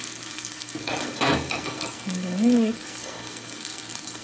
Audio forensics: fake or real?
fake